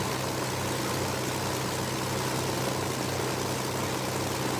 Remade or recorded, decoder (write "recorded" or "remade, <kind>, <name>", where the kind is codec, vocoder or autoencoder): recorded